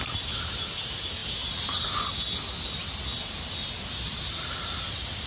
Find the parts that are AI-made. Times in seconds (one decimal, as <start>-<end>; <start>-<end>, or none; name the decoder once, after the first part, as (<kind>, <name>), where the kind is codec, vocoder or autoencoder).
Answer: none